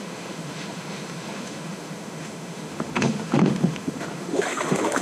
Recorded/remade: remade